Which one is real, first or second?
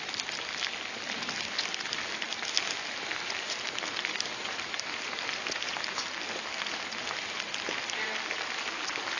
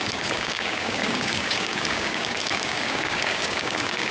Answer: first